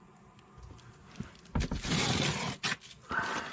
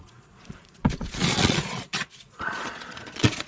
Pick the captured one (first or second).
first